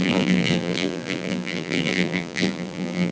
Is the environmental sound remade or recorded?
remade